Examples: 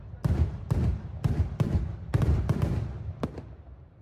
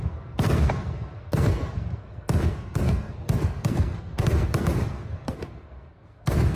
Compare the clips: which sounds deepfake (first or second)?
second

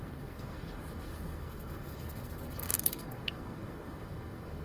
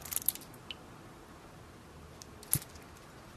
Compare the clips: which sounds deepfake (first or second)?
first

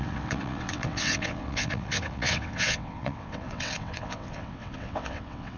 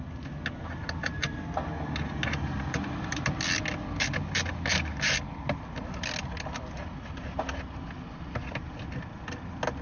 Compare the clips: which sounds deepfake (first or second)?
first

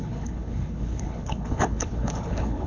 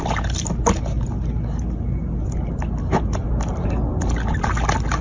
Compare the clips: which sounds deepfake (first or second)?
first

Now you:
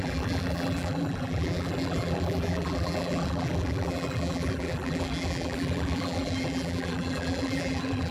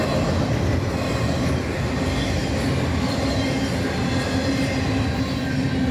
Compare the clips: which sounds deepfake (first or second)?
first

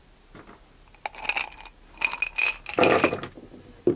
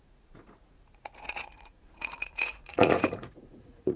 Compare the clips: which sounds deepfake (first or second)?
second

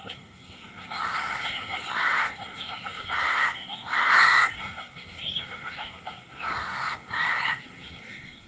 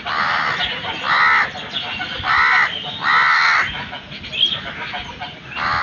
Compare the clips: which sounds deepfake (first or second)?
first